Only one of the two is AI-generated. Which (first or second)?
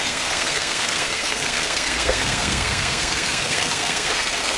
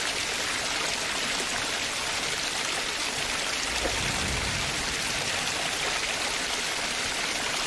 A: first